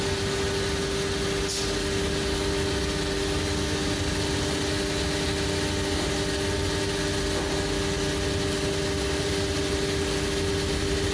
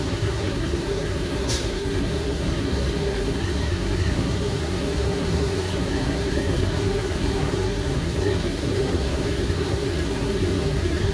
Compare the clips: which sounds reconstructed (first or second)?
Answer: second